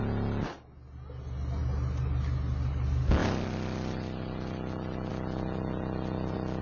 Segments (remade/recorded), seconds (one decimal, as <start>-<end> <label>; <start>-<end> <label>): 0.0-6.6 recorded